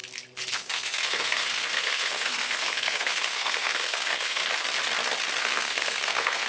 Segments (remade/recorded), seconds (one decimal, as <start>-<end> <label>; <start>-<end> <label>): 0.0-0.5 recorded; 0.5-4.4 remade; 4.4-5.4 recorded; 5.4-6.5 remade